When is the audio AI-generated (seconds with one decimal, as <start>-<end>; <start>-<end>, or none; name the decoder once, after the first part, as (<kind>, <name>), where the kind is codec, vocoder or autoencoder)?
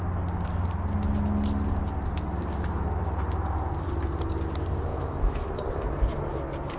4.9-5.5 (autoencoder, DAC-VAE)